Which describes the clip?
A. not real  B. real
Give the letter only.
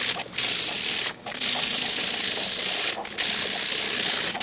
B